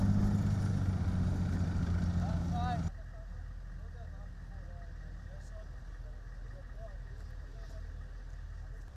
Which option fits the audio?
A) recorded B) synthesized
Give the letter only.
A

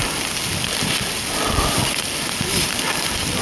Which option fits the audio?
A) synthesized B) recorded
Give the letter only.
B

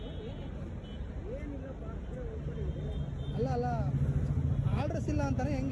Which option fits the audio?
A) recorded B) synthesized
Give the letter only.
A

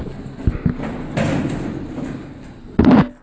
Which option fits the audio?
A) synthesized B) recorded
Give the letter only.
B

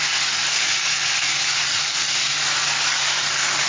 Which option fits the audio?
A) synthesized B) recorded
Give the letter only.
A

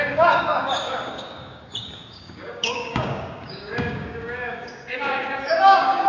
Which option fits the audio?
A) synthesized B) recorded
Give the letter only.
A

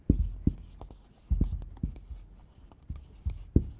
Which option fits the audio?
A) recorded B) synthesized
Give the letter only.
A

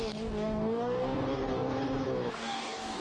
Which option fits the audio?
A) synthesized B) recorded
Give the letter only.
A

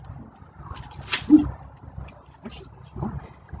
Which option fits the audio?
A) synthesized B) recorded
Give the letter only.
B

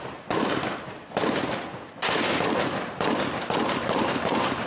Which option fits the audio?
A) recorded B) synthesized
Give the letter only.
A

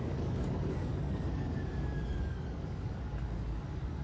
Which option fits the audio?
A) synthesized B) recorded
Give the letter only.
A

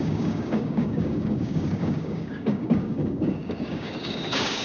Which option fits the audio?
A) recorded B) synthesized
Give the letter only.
B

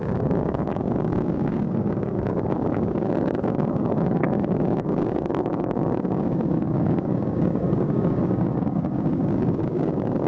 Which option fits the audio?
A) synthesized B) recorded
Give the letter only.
A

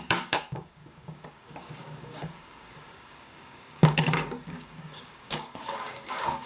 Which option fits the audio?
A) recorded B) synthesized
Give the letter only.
B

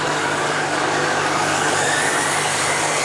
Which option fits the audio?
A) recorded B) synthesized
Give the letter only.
B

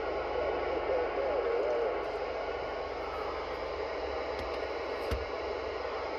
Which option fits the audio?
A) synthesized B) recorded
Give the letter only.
B